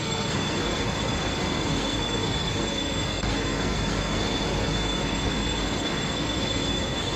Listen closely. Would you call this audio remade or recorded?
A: remade